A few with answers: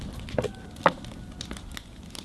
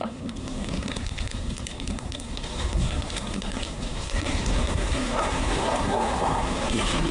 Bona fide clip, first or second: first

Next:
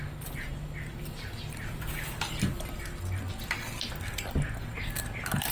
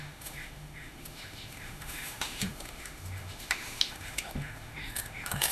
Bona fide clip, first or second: first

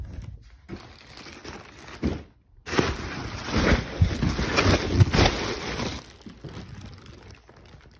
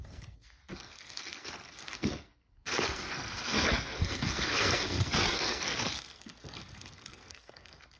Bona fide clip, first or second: first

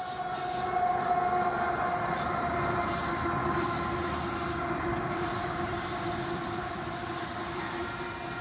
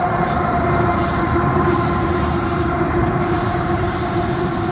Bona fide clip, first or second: first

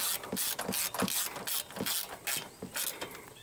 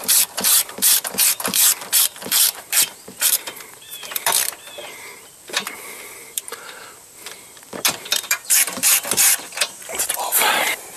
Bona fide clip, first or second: first